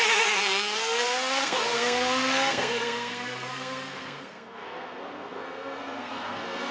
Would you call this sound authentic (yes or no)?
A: no